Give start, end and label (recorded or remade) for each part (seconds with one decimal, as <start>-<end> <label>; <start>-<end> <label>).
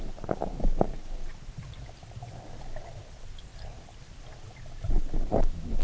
0.0-5.8 recorded